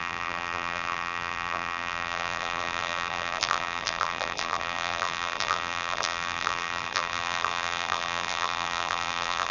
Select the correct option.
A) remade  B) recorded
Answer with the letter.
A